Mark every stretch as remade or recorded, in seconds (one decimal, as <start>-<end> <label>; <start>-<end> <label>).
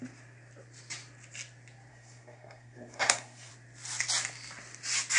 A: 0.0-1.9 recorded; 1.9-3.5 remade; 3.5-5.2 recorded